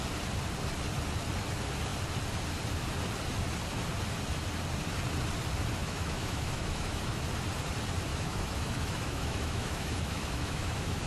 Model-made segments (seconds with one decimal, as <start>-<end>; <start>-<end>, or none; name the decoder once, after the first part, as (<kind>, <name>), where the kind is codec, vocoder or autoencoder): 5.8-7.2 (autoencoder, DAC-VAE); 8.1-11.1

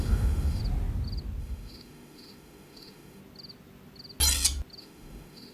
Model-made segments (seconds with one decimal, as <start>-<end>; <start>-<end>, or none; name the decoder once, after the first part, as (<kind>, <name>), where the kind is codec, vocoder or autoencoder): 0.0-0.6 (autoencoder, DAC-VAE); 1.4-3.2; 4.8-5.5

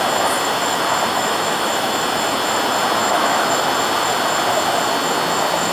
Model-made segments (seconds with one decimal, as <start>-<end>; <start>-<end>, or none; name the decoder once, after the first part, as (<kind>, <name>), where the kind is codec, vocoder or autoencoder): 1.1-2.0 (autoencoder, DAC-VAE); 3.0-3.7

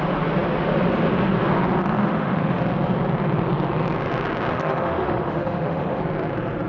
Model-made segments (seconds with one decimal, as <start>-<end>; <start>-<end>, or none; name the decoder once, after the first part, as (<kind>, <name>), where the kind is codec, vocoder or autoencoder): 2.0-2.6 (autoencoder, DAC-VAE); 4.5-6.0